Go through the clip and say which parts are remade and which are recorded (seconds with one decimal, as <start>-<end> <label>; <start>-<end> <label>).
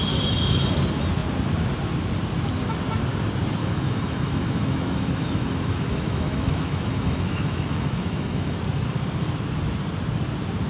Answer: 0.0-3.6 recorded; 3.6-8.5 remade; 8.5-10.7 recorded